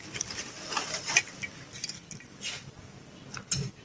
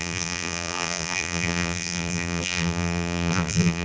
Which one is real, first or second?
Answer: first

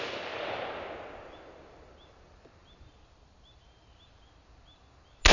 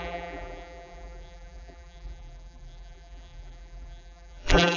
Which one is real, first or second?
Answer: first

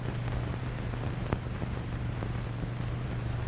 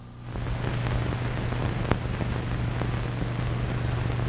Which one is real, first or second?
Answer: second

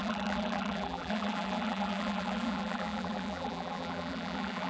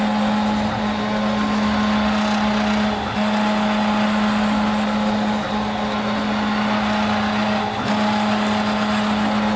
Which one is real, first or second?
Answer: second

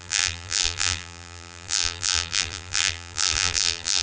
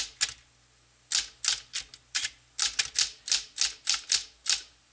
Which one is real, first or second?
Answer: second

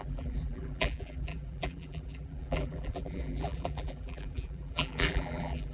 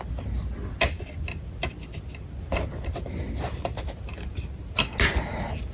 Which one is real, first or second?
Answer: second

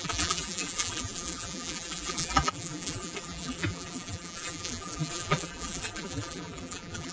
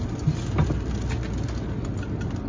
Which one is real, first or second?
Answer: second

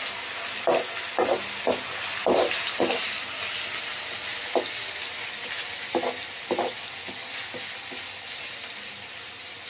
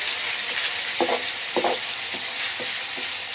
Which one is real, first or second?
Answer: first